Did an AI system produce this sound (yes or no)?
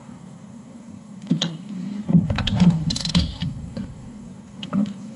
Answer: yes